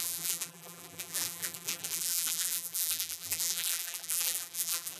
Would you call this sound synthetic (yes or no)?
yes